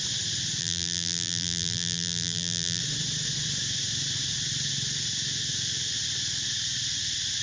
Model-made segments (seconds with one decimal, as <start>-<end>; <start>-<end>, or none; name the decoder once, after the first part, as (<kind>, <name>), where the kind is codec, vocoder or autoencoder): 0.6-2.8 (vocoder, BigVGAN v2)